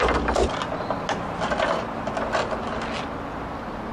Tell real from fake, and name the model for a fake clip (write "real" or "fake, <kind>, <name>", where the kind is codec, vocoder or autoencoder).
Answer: real